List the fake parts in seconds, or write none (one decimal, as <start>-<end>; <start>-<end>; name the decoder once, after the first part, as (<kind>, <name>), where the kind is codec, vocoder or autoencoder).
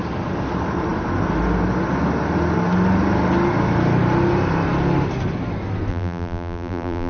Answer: 5.9-7.1 (vocoder, BigVGAN v2)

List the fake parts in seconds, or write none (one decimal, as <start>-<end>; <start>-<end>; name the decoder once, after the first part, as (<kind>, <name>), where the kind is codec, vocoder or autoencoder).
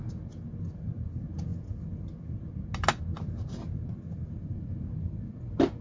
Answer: none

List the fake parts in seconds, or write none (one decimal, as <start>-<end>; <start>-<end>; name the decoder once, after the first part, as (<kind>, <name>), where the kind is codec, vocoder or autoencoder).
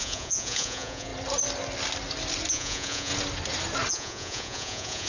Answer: 0.0-1.1 (vocoder, Vocos); 2.5-3.1; 3.9-5.1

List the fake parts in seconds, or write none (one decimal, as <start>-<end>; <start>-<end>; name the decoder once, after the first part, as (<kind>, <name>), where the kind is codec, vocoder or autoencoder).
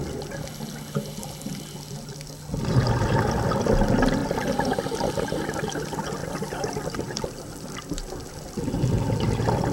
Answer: none